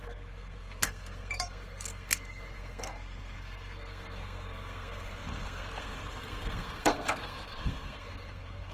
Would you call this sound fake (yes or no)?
yes